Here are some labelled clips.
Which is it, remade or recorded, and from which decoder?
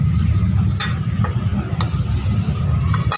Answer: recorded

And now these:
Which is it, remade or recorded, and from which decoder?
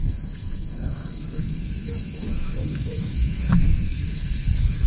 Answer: remade, codec, SNAC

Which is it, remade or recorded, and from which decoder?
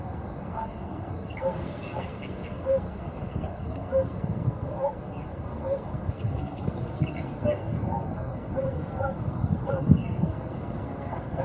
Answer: remade, codec, SNAC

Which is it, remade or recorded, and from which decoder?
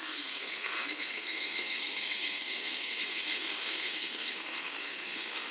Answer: remade, codec, SNAC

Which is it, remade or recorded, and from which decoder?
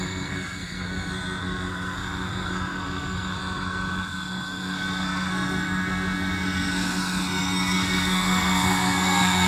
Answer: remade, codec, SNAC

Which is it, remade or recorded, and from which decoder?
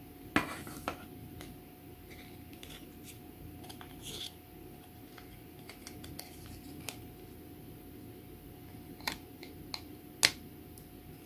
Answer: recorded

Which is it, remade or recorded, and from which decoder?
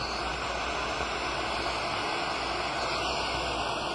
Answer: recorded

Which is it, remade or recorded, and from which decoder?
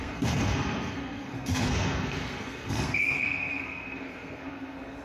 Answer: remade, codec, SNAC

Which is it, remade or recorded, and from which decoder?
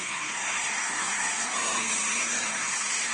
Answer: remade, codec, SNAC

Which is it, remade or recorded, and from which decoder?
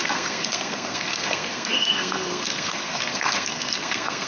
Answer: remade, codec, SNAC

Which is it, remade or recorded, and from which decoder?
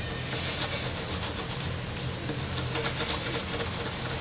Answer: recorded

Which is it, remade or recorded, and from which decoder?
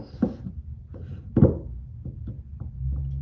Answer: recorded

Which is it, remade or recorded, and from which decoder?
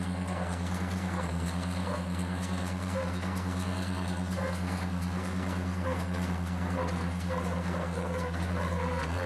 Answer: remade, codec, SNAC